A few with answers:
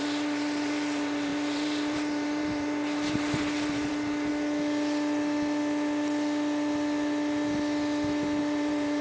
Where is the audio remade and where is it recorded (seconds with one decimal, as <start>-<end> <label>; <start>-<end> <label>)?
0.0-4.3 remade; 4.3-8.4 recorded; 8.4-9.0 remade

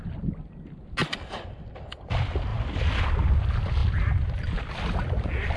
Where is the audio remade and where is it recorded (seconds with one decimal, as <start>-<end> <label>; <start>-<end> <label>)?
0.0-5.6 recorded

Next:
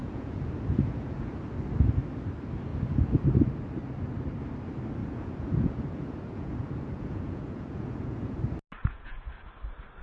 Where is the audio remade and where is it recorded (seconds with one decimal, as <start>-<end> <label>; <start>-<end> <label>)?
0.0-1.4 remade; 1.4-2.7 recorded; 2.7-3.2 remade; 3.2-5.0 recorded; 5.0-8.4 remade; 8.4-8.8 recorded; 8.8-9.3 remade; 9.3-10.0 recorded

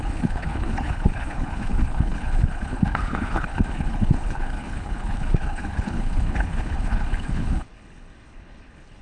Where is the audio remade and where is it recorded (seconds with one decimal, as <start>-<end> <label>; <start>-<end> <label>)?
0.0-9.0 remade